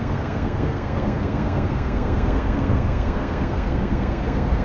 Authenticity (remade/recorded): remade